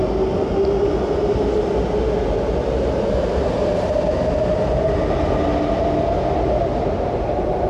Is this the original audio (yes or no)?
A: yes